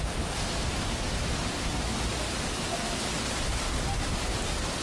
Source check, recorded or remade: recorded